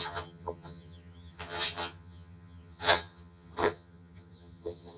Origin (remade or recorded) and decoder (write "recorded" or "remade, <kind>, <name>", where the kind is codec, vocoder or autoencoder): remade, vocoder, HiFi-GAN